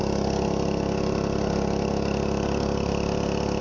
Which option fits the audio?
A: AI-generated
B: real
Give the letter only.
B